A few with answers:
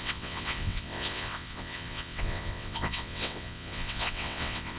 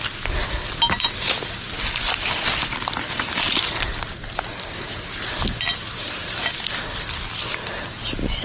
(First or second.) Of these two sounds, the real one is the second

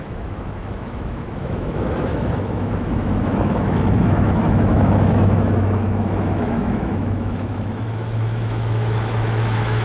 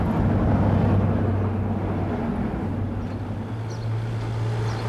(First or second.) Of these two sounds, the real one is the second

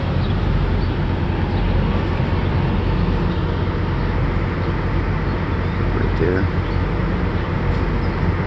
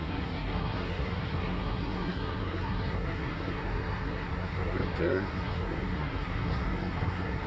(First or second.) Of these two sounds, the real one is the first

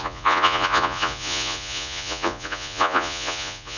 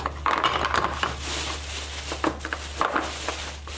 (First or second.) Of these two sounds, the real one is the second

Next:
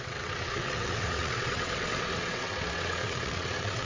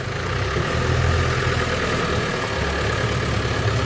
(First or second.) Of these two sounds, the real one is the second